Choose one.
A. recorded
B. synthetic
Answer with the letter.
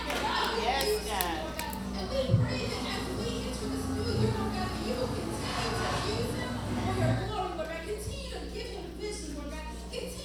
A